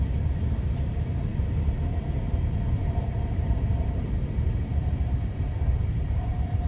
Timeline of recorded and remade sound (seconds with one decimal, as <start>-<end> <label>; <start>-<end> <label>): 0.0-6.7 remade